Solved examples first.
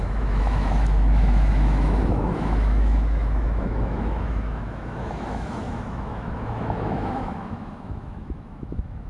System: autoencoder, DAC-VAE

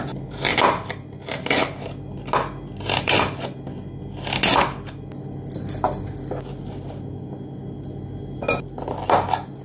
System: none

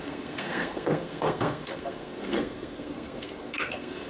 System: codec, SNAC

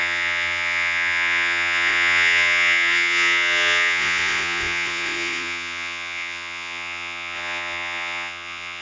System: vocoder, Vocos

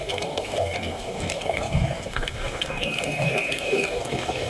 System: codec, DAC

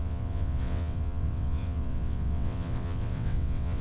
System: vocoder, WaveNeXt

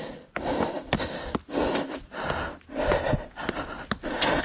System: none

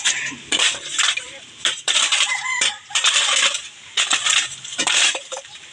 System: vocoder, BigVGAN v2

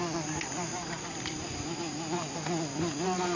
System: none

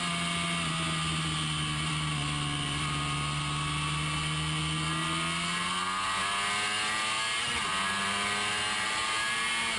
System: none